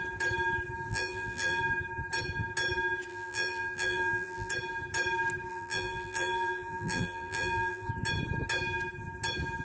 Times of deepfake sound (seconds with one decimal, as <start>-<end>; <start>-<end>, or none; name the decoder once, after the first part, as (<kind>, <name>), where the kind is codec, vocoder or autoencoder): 0.9-1.6 (vocoder, BigVGAN v2); 3.1-4.5; 5.5-7.9